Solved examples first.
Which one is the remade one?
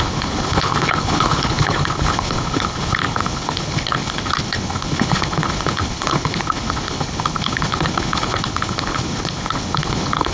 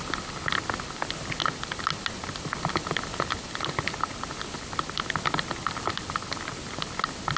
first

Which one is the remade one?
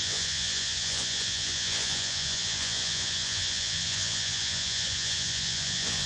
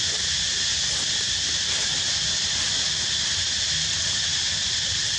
first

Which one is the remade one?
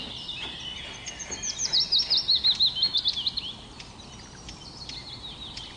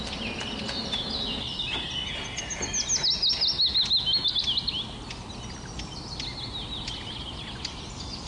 first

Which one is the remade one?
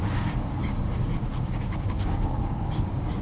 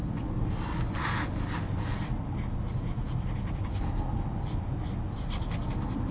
first